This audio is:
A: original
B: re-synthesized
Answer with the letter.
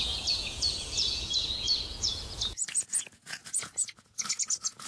B